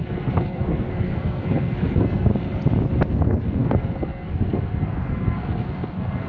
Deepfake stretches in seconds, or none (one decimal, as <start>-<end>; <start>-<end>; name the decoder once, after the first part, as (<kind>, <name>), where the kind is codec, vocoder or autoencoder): 0.0-2.3 (codec, SNAC); 3.1-6.3